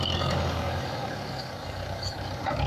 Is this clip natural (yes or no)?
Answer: no